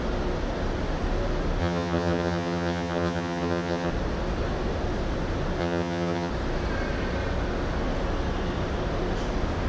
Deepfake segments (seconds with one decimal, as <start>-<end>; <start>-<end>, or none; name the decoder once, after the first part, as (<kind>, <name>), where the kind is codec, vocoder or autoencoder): 1.6-3.9 (vocoder, HiFi-GAN); 5.6-6.3